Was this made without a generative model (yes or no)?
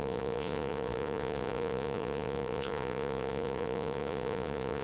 no